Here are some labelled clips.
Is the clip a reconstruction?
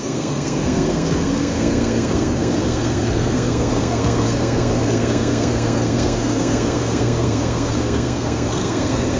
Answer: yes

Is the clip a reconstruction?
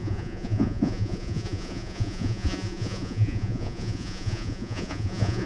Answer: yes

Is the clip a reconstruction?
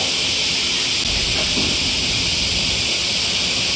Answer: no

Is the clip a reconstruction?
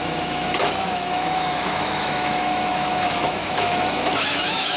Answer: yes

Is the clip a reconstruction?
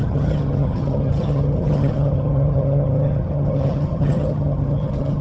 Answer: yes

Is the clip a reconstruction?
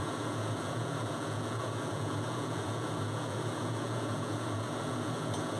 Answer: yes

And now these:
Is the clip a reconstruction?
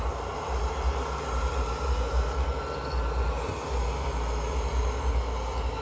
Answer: no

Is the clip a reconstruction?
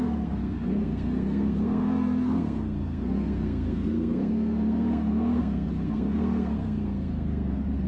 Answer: yes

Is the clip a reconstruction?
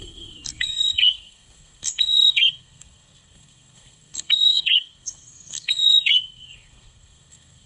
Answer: yes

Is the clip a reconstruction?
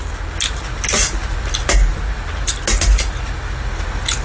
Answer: no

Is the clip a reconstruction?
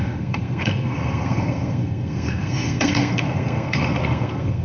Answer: yes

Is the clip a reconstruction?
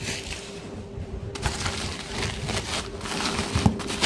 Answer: no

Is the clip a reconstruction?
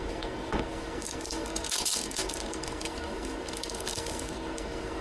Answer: yes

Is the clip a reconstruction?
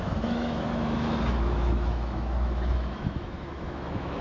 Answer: yes